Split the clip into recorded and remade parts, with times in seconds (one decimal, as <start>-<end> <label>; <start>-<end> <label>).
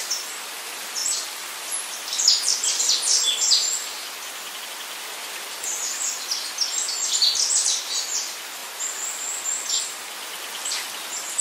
0.0-11.4 recorded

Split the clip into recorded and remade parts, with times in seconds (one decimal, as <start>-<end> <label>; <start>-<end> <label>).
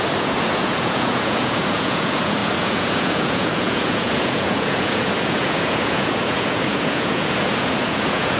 0.0-8.4 remade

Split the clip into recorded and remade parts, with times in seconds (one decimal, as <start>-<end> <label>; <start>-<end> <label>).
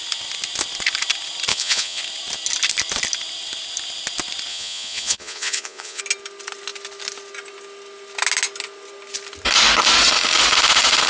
0.0-1.5 recorded; 1.5-2.0 remade; 2.0-4.5 recorded; 4.5-6.0 remade; 6.0-11.1 recorded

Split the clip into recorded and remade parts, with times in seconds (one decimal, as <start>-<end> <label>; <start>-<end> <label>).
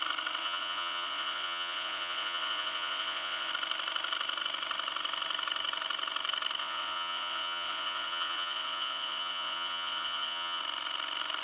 0.0-0.4 recorded; 0.4-3.5 remade; 3.5-6.6 recorded; 6.6-10.6 remade; 10.6-11.4 recorded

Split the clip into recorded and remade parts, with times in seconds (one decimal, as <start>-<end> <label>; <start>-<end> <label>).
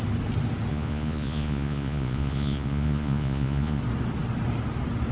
0.0-0.7 recorded; 0.7-3.8 remade; 3.8-5.1 recorded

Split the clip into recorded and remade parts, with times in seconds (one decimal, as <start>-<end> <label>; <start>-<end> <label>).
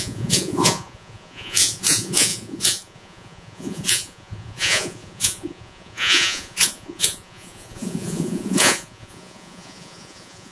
0.0-10.5 remade